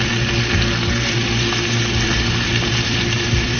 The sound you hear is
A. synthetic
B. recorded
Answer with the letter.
A